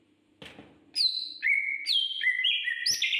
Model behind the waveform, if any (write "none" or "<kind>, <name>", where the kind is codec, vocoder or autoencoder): none